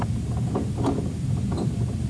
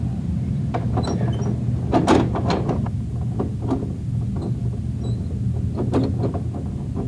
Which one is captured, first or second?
second